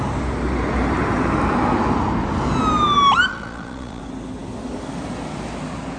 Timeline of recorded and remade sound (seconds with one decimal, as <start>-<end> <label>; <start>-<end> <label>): 0.0-3.3 recorded; 3.3-4.0 remade; 4.0-6.0 recorded